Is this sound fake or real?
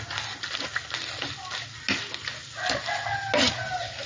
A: real